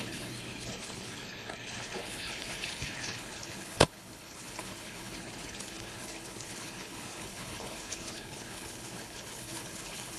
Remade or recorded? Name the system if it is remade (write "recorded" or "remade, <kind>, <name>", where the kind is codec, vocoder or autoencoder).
remade, codec, HILCodec